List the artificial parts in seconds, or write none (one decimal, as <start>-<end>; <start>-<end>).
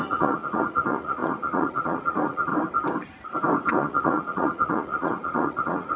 0.0-2.5; 3.7-6.0